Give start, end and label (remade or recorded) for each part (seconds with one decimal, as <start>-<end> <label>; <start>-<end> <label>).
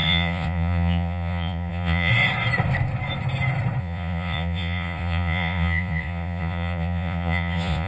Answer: 0.0-2.1 remade; 2.1-3.8 recorded; 3.8-7.9 remade